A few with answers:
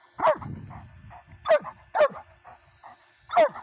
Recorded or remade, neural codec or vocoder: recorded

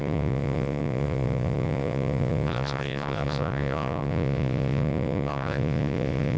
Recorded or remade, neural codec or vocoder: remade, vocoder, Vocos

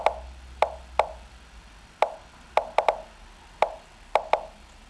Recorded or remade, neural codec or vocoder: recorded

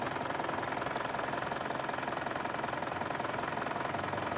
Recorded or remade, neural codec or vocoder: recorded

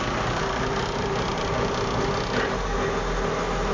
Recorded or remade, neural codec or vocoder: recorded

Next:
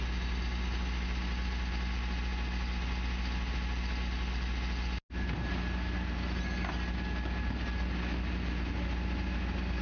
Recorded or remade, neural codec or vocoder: recorded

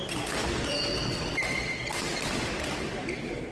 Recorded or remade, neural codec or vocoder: recorded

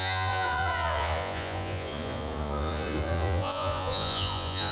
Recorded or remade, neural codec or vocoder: remade, vocoder, Vocos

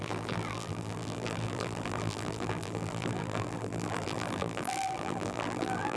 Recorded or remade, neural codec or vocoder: remade, vocoder, BigVGAN v2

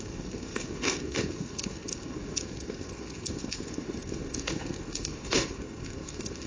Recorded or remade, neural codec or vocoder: remade, codec, SNAC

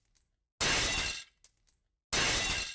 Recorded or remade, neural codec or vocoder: recorded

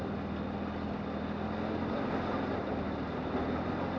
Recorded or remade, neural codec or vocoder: recorded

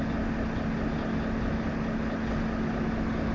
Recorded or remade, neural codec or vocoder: recorded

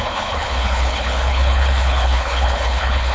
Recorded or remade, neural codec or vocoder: remade, codec, HILCodec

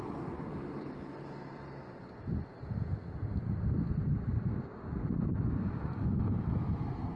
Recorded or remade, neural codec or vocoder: recorded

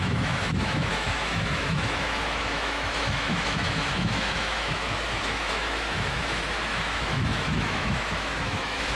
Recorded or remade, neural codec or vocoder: remade, autoencoder, DAC-VAE